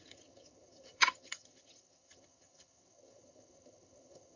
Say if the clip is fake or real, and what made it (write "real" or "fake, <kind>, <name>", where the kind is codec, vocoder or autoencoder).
fake, vocoder, HiFi-GAN